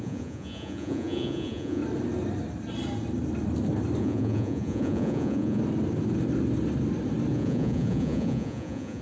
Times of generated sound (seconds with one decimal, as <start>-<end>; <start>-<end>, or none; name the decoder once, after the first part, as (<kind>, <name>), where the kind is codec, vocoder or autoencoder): 0.0-1.8 (vocoder, Vocos); 4.0-5.6; 7.3-9.0